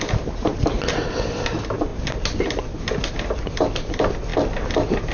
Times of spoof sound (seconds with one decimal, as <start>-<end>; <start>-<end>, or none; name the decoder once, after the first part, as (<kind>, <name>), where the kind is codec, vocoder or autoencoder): none